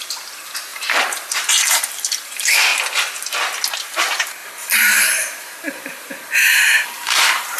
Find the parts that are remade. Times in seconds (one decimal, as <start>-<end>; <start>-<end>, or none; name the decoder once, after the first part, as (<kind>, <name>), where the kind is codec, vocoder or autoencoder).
0.0-2.7 (vocoder, BigVGAN v2); 3.8-7.6